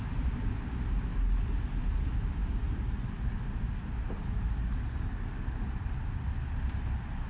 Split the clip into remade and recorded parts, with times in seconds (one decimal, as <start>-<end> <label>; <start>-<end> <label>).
0.0-7.3 recorded